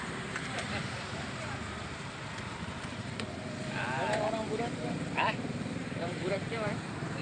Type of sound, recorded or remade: remade